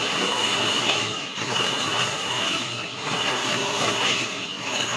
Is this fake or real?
fake